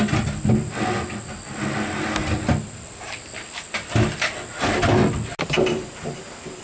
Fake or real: real